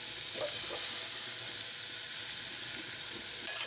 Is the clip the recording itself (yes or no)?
yes